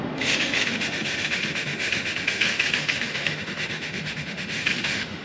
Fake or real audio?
fake